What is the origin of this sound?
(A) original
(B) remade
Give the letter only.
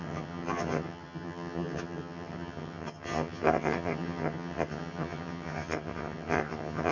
B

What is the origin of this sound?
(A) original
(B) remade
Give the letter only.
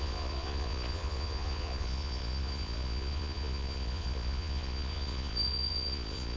B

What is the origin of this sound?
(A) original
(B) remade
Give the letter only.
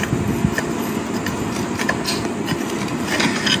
A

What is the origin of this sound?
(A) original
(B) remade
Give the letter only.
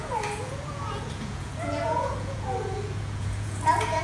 B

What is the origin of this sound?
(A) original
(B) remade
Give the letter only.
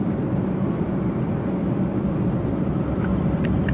A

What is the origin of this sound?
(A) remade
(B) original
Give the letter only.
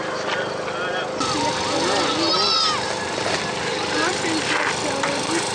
B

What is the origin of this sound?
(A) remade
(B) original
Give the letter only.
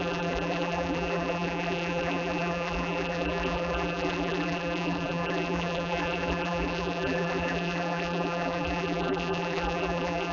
A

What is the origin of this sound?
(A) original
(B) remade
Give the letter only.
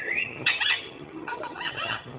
B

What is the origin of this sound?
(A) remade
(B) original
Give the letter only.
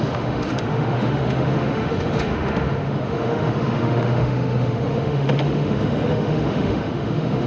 A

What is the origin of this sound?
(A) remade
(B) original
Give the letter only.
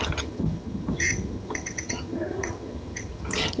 A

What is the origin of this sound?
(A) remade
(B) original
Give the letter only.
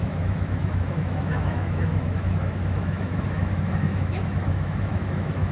A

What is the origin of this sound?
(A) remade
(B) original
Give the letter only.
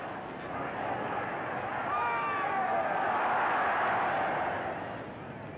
B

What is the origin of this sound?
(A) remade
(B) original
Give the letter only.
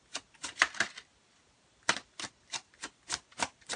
B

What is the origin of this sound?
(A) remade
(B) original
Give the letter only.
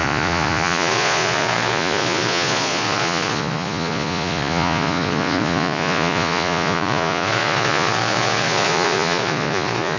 A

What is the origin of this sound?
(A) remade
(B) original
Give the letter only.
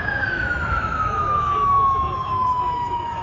A